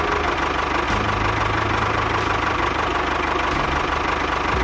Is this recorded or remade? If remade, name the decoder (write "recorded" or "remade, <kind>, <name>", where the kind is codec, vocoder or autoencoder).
recorded